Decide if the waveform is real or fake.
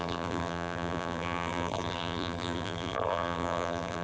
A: fake